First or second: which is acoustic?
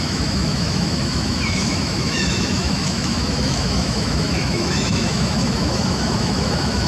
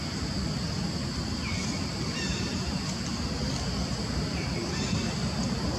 second